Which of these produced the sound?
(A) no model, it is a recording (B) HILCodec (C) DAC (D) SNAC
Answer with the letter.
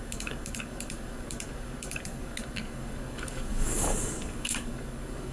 C